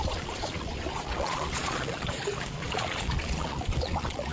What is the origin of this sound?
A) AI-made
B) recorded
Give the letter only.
A